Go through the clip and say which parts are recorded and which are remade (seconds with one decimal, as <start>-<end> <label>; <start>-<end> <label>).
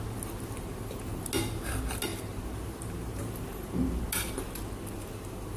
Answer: 0.0-5.6 recorded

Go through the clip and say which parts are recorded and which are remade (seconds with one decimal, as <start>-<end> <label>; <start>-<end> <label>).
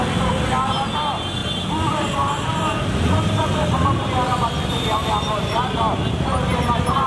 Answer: 0.0-1.4 recorded; 1.4-5.7 remade; 5.7-7.1 recorded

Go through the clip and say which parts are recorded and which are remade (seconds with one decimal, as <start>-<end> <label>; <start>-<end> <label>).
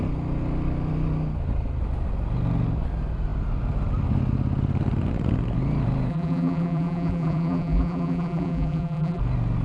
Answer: 0.0-6.1 recorded; 6.1-9.2 remade; 9.2-9.6 recorded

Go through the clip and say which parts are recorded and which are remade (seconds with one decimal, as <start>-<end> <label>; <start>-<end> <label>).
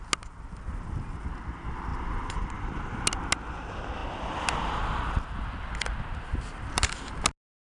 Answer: 0.0-7.7 recorded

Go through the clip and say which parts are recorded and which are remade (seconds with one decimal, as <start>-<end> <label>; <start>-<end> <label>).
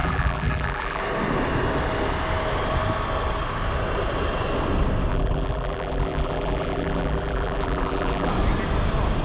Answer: 0.0-1.0 remade; 1.0-5.1 recorded; 5.1-8.3 remade; 8.3-9.2 recorded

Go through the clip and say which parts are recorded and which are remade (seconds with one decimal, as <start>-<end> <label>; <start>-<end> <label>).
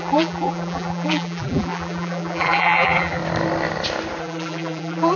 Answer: 0.0-3.2 remade; 3.2-4.2 recorded; 4.2-5.2 remade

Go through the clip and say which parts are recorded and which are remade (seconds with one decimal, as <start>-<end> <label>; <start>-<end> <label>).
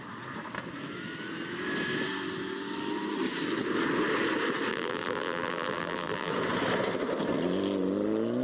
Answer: 0.0-4.7 recorded; 4.7-6.3 remade; 6.3-8.4 recorded